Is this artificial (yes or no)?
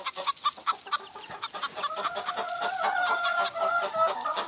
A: no